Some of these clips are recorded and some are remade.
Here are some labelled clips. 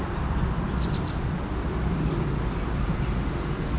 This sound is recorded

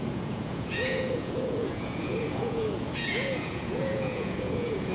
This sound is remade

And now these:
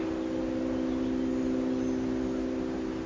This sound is recorded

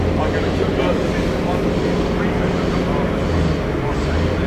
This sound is recorded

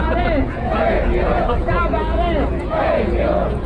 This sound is remade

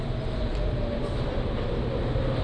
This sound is recorded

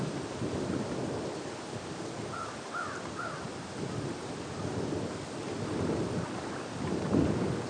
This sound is recorded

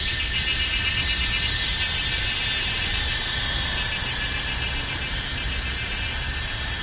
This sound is recorded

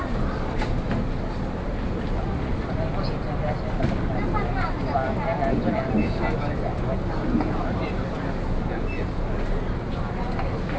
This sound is recorded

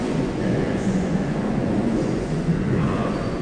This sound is remade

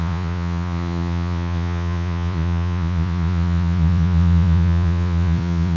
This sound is remade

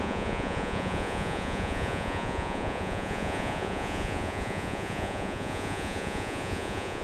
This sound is remade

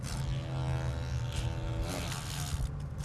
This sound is recorded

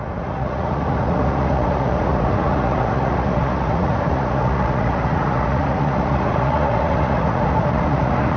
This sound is remade